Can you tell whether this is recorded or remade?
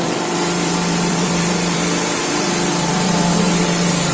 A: remade